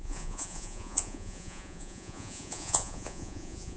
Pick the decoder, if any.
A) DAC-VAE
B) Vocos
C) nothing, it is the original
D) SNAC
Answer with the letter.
B